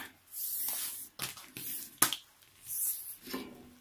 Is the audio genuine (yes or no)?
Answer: yes